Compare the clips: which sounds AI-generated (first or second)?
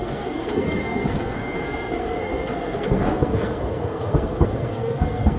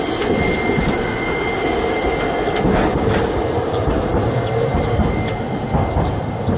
first